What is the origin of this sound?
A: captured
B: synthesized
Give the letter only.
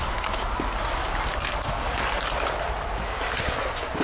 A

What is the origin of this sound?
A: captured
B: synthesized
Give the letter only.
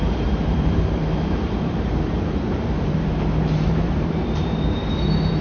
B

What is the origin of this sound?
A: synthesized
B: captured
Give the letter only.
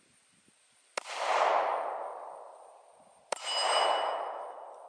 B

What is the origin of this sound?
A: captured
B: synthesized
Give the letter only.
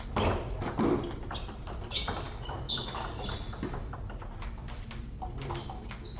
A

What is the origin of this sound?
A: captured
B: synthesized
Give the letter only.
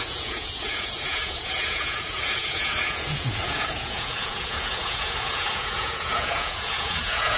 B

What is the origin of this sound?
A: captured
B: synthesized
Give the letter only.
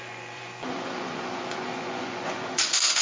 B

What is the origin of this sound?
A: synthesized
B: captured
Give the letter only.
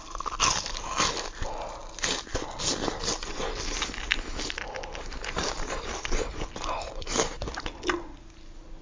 B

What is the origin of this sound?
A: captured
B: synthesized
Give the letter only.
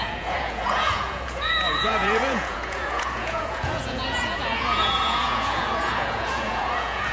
B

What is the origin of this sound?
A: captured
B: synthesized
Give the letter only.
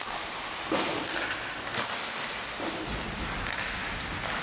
A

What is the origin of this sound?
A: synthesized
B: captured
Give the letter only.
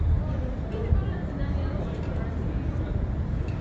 B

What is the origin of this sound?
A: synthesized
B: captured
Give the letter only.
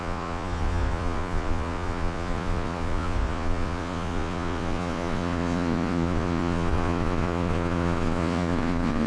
A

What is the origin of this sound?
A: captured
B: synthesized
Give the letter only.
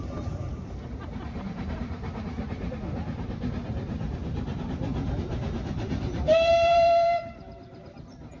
B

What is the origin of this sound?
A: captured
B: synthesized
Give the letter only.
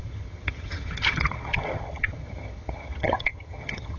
B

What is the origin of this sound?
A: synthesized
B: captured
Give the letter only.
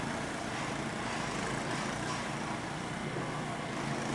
B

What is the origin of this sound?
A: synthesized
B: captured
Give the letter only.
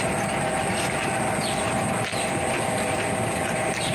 B